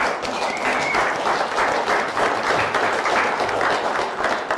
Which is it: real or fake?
real